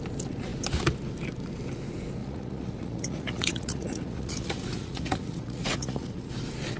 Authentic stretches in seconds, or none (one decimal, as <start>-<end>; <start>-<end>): 0.0-2.2; 6.3-6.8